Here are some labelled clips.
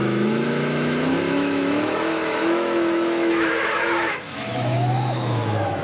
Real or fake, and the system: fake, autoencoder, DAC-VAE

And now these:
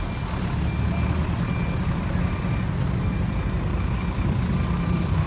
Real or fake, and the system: real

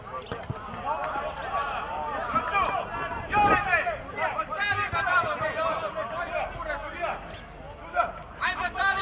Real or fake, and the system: real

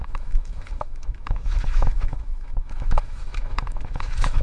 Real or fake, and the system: fake, autoencoder, DAC-VAE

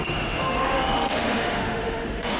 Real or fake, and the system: fake, autoencoder, DAC-VAE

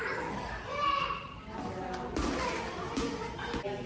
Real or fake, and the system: real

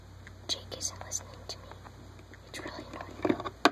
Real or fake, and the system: real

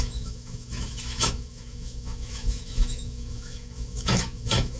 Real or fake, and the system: fake, autoencoder, DAC-VAE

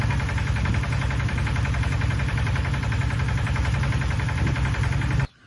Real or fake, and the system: real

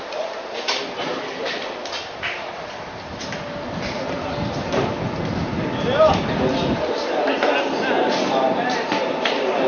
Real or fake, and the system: real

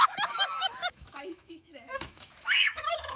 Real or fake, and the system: fake, autoencoder, DAC-VAE